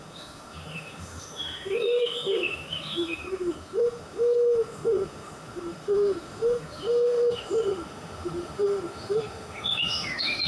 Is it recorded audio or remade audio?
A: remade